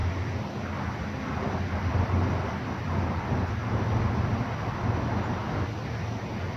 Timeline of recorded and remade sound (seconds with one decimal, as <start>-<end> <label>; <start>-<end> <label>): 0.0-3.8 remade; 3.8-6.6 recorded